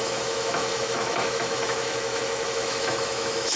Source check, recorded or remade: remade